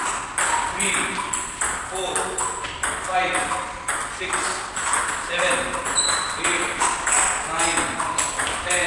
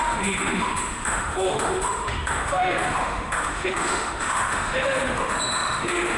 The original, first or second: first